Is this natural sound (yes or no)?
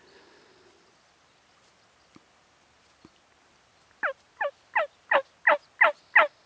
yes